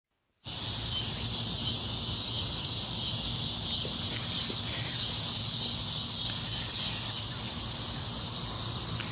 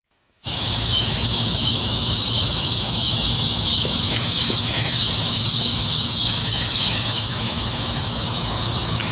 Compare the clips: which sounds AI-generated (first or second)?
second